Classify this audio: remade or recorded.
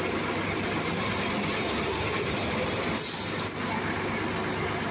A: recorded